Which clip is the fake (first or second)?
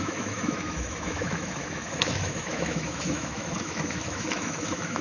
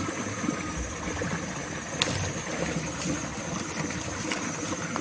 first